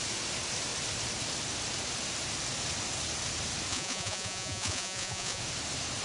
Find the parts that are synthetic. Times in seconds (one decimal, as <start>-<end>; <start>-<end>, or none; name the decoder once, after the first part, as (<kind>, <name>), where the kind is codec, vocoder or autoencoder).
3.7-5.4 (vocoder, Vocos)